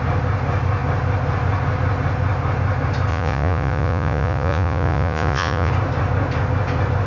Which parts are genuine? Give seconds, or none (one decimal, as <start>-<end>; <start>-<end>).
0.0-3.1; 5.7-7.1